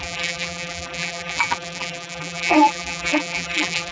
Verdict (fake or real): fake